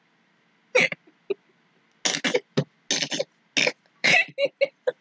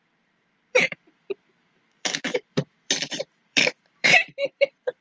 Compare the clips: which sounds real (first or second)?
first